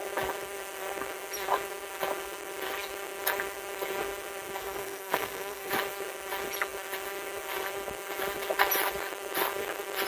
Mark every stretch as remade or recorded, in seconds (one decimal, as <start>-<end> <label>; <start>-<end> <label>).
0.0-4.6 recorded; 4.6-5.7 remade; 5.7-10.1 recorded